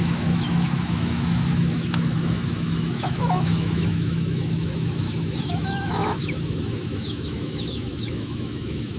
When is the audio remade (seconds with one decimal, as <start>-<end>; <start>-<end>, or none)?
0.0-9.0